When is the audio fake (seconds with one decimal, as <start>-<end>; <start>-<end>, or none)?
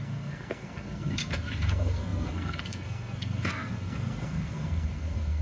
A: 0.0-5.4